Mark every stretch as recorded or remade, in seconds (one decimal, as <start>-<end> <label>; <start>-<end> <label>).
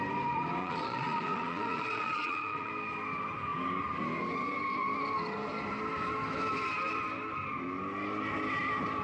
0.0-0.6 recorded; 0.6-2.7 remade; 2.7-9.0 recorded